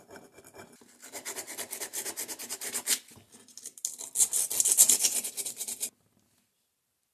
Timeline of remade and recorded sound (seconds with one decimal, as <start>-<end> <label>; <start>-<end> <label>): 0.0-7.1 recorded